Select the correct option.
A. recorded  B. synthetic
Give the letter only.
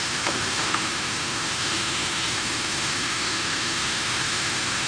B